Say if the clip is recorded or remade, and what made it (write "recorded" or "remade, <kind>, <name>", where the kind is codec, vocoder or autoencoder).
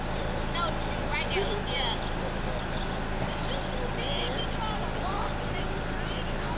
recorded